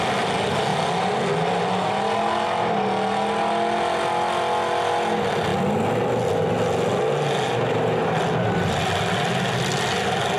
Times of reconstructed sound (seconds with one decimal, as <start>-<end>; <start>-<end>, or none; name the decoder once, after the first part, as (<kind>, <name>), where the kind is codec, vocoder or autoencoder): none